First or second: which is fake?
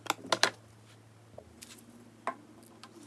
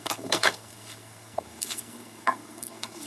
second